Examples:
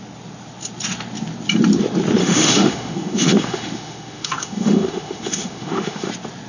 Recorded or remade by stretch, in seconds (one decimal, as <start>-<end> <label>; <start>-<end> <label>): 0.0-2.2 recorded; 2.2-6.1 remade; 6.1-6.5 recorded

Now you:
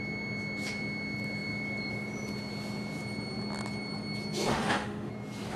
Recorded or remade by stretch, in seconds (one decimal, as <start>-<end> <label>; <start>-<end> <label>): 0.0-4.5 recorded; 4.5-5.1 remade; 5.1-5.6 recorded

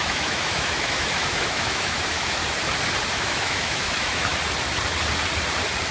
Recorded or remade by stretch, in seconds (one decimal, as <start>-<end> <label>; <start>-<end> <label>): 0.0-2.4 remade; 2.4-3.1 recorded; 3.1-4.3 remade; 4.3-5.9 recorded